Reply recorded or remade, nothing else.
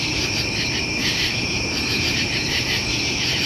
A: remade